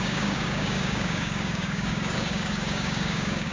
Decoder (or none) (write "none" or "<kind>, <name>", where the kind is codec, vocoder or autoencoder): codec, DAC